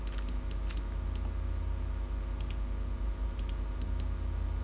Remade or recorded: recorded